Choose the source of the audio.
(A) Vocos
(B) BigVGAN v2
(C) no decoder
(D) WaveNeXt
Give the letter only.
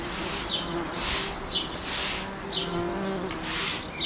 C